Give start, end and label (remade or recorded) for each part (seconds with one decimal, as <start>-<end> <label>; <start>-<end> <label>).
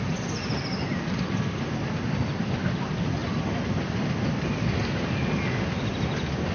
0.0-6.5 recorded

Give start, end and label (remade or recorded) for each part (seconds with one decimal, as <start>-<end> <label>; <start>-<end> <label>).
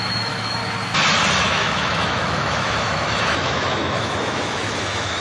0.0-0.6 remade; 0.6-1.4 recorded; 1.4-5.2 remade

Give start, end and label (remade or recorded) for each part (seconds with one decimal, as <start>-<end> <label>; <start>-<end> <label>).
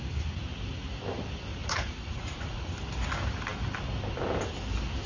0.0-1.5 recorded; 1.5-2.7 remade; 2.7-5.1 recorded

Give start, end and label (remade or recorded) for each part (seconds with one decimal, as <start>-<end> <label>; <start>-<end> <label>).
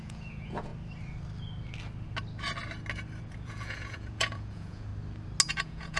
0.0-0.7 remade; 0.7-3.2 recorded; 3.2-4.9 remade; 4.9-5.5 recorded; 5.5-6.0 remade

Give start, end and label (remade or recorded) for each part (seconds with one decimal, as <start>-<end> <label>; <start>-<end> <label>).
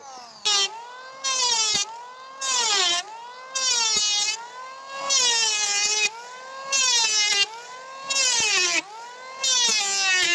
0.0-10.3 recorded